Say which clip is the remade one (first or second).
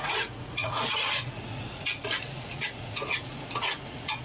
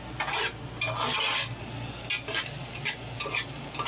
first